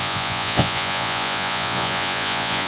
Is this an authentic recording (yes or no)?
no